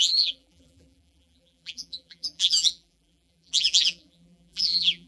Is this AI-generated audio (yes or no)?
yes